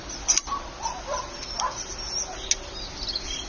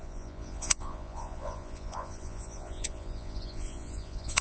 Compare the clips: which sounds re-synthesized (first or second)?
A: second